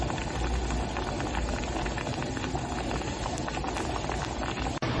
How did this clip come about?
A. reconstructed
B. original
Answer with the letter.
B